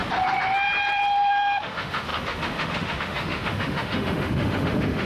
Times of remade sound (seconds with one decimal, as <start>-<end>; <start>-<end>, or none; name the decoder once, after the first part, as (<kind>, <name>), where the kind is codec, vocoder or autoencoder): 1.3-5.1 (autoencoder, DAC-VAE)